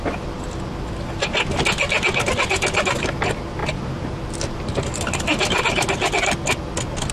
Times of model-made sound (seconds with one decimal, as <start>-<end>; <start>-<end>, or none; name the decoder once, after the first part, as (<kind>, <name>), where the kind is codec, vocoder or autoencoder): none